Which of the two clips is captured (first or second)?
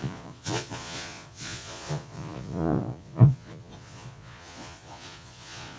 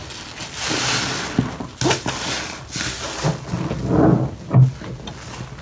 second